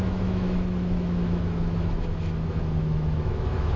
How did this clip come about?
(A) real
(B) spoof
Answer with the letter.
B